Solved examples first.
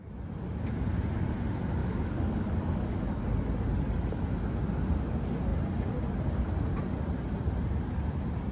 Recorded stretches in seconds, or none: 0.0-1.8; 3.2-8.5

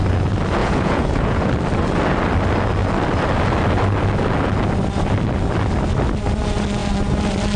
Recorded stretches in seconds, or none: 0.0-0.6; 1.5-7.6

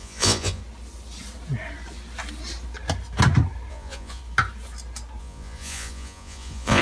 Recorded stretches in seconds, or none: 0.6-3.7; 4.2-5.2

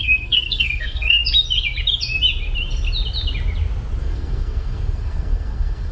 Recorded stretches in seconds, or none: 1.2-4.0

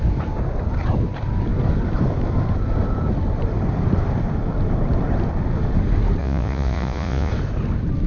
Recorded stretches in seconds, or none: 0.0-6.2; 7.3-8.1

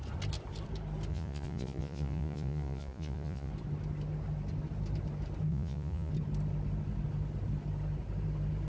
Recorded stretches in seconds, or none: 0.0-1.1; 3.5-5.5; 6.1-8.7